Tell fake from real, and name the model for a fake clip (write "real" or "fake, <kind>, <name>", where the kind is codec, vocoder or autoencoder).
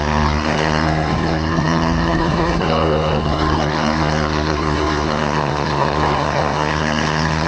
fake, codec, SNAC